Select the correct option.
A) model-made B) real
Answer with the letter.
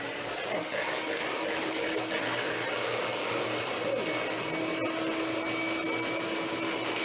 B